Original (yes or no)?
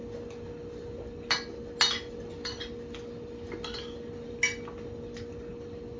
yes